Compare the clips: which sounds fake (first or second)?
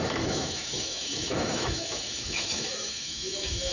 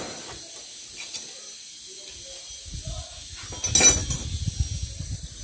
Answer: first